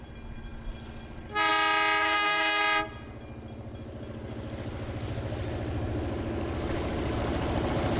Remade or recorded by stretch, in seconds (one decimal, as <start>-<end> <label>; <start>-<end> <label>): 0.0-2.0 recorded; 2.0-2.6 remade; 2.6-8.0 recorded

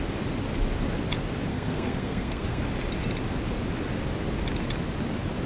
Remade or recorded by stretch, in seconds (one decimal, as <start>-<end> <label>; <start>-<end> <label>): 0.0-1.5 recorded; 1.5-2.6 remade; 2.6-5.5 recorded

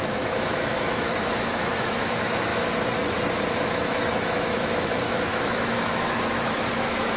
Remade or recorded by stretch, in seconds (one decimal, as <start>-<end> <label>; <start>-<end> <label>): 0.0-2.5 remade; 2.5-3.6 recorded; 3.6-7.2 remade

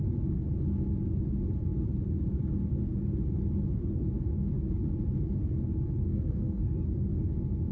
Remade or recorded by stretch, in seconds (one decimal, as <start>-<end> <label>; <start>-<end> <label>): 0.0-6.1 recorded; 6.1-6.7 remade; 6.7-7.7 recorded

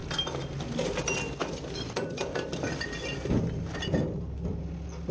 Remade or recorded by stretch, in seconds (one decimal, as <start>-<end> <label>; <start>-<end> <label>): 0.0-5.1 recorded

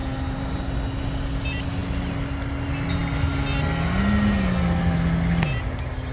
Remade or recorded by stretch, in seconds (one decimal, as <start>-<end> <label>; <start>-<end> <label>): 0.0-0.6 remade; 0.6-6.1 recorded